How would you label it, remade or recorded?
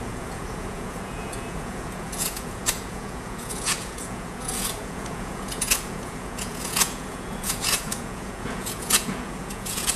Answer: remade